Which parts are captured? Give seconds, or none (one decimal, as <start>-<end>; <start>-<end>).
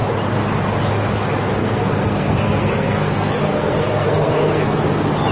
0.0-1.6; 4.8-5.3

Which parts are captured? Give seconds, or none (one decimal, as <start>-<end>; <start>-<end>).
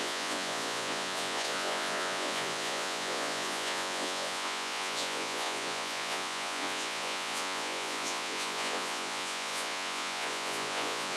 none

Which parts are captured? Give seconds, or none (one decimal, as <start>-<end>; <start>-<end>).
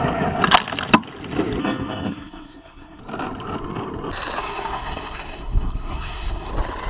0.0-1.6; 3.0-4.4; 6.5-6.9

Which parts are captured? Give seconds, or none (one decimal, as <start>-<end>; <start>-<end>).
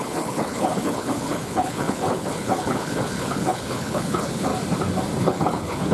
4.5-5.2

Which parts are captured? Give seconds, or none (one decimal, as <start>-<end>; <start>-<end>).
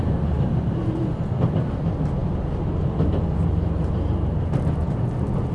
0.0-5.5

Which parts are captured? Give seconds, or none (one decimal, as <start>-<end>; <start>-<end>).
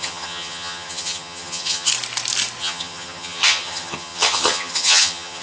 1.9-2.6